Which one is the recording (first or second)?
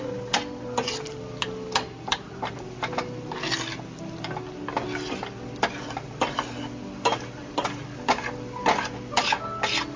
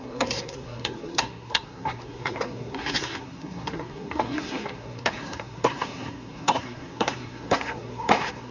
first